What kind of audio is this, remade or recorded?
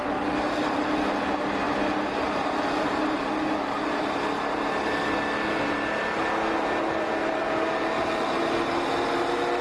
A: recorded